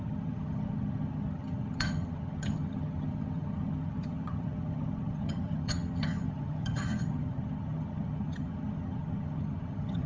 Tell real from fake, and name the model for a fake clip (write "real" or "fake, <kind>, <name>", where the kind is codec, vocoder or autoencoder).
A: fake, vocoder, HiFi-GAN